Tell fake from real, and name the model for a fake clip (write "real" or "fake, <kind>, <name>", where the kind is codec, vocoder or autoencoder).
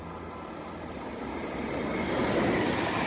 real